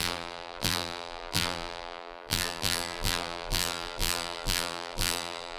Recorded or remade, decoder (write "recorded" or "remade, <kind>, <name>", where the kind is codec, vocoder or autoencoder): remade, vocoder, BigVGAN v2